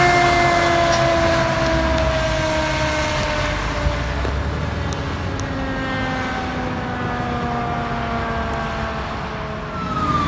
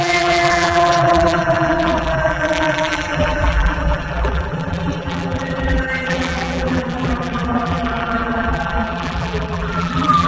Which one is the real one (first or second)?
first